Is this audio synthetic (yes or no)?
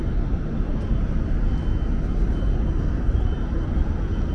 no